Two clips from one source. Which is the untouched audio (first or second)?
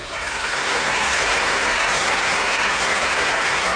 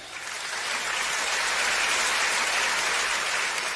second